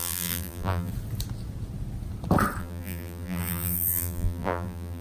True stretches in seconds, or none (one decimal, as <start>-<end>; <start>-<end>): 0.9-2.6